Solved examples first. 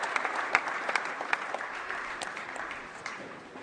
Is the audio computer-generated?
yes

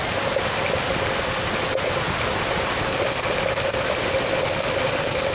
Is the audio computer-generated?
no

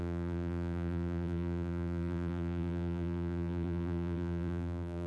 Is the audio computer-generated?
yes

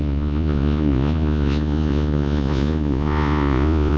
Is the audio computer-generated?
yes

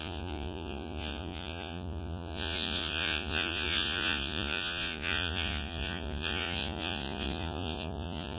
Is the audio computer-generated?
yes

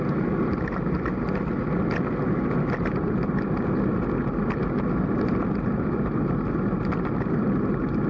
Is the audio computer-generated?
no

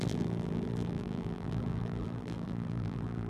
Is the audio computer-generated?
yes